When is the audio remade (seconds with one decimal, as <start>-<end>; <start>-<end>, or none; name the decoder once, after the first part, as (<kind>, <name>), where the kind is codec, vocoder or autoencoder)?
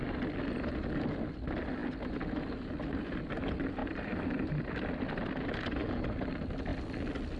3.8-4.5 (vocoder, BigVGAN v2)